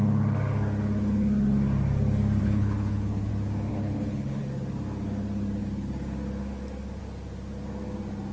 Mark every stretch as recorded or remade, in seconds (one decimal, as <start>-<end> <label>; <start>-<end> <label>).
0.0-2.4 recorded; 2.4-3.3 remade; 3.3-3.7 recorded; 3.7-4.4 remade; 4.4-8.3 recorded